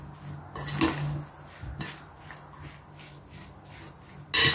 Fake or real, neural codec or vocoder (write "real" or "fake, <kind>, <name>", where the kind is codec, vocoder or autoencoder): real